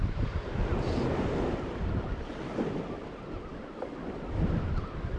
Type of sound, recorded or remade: recorded